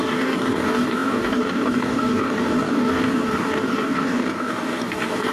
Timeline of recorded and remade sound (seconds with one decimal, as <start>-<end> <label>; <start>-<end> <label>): 0.0-5.3 remade